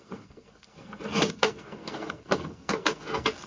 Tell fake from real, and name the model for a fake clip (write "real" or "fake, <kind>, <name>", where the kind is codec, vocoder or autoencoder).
fake, codec, SNAC